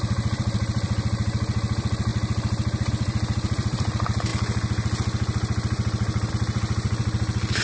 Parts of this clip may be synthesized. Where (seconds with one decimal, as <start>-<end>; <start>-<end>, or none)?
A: 0.0-2.1; 2.9-4.3; 6.3-7.6